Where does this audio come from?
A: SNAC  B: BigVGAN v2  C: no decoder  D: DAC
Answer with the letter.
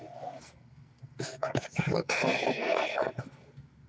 A